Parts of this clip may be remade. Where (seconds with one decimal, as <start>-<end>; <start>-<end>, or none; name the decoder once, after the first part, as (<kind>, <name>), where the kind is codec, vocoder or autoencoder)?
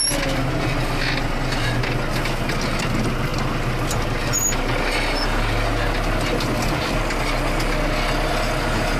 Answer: none